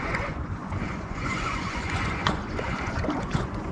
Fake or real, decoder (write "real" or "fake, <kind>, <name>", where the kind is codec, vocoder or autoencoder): fake, vocoder, Vocos